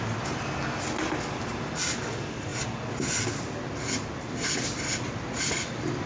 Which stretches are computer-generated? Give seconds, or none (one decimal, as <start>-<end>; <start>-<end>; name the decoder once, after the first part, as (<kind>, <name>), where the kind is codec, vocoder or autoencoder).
none